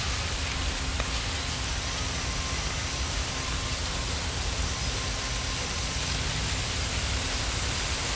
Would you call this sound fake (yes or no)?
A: no